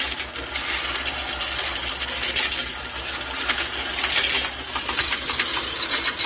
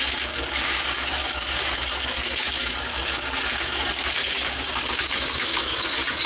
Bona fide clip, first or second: first